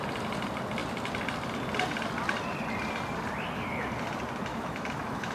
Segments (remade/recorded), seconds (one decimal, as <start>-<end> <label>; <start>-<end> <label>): 0.0-4.5 recorded; 4.5-5.3 remade